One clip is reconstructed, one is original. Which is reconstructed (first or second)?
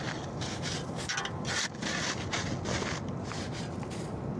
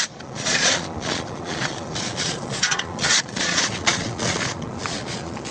second